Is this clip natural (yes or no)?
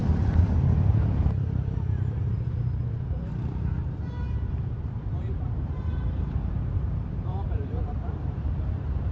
no